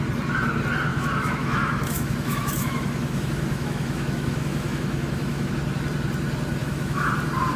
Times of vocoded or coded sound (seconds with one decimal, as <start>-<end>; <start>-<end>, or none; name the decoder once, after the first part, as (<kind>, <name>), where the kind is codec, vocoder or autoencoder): 0.9-5.5 (autoencoder, DAC-VAE); 6.6-7.1